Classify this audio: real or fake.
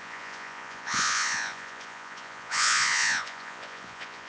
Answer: fake